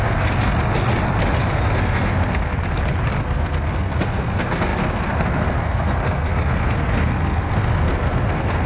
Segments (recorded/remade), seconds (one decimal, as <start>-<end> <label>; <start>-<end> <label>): 0.0-0.5 remade; 0.5-1.5 recorded; 1.5-2.5 remade; 2.5-3.2 recorded; 3.2-8.7 remade